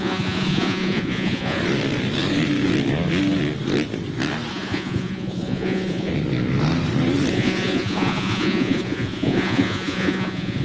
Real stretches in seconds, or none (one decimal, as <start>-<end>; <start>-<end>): 1.6-4.5; 6.1-7.3